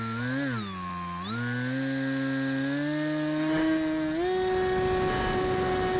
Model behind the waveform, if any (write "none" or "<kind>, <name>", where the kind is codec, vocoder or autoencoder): none